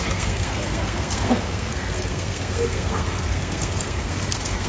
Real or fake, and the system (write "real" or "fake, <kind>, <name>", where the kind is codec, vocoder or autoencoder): fake, codec, SNAC